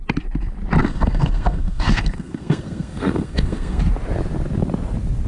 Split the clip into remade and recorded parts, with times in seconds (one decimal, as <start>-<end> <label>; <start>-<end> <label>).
0.0-0.8 recorded; 0.8-3.8 remade; 3.8-5.3 recorded